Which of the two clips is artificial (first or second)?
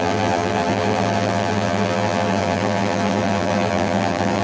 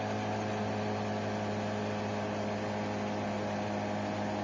first